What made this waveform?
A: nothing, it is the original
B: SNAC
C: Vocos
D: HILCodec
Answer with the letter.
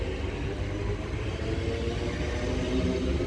A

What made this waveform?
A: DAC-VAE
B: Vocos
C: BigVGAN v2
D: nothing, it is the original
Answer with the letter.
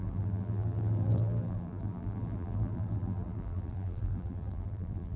C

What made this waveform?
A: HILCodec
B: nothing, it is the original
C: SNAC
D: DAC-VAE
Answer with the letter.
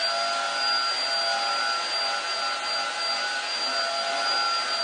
B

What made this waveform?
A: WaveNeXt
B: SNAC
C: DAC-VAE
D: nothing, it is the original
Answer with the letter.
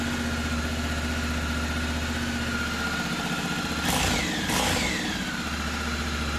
D